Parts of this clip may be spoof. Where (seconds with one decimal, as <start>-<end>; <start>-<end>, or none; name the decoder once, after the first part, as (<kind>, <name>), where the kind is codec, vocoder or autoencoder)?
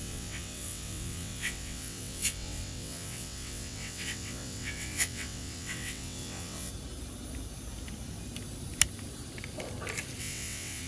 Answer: 0.0-6.7 (vocoder, WaveNeXt); 10.2-10.9